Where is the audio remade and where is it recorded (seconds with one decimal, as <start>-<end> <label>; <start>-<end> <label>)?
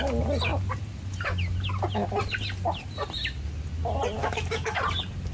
0.0-4.2 recorded; 4.2-4.8 remade; 4.8-5.3 recorded